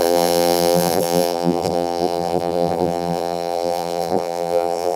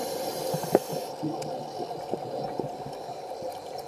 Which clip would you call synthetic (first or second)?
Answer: first